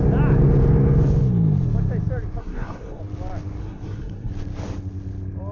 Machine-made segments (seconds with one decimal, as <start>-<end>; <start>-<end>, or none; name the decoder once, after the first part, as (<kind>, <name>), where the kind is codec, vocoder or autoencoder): 2.4-3.0 (codec, SNAC); 3.6-4.3